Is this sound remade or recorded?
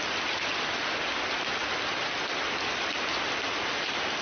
recorded